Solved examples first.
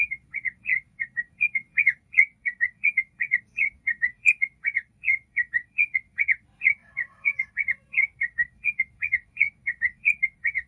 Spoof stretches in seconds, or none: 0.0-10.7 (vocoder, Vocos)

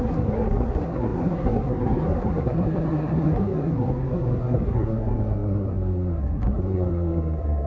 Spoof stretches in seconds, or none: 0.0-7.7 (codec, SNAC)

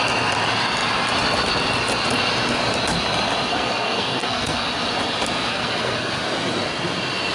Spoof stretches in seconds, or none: 3.5-4.7 (codec, SNAC); 5.5-6.1

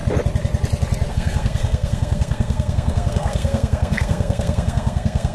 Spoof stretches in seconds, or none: 1.1-5.3 (codec, SNAC)